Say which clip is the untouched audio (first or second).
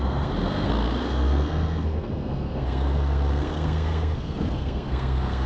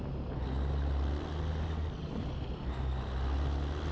second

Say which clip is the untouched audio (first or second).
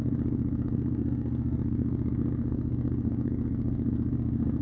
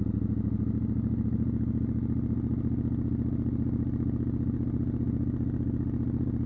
second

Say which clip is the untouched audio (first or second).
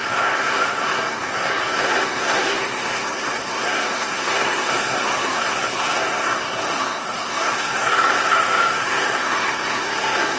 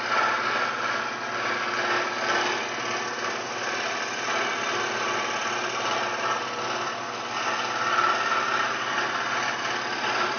second